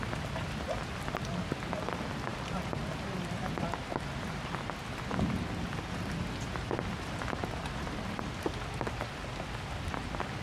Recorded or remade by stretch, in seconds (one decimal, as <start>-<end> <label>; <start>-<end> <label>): 0.0-2.3 recorded; 2.3-3.5 remade; 3.5-10.4 recorded